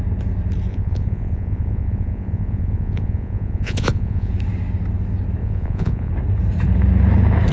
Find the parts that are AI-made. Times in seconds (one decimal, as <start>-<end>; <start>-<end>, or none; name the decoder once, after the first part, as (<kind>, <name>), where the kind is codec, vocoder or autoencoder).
0.7-4.3 (vocoder, Vocos); 5.4-6.1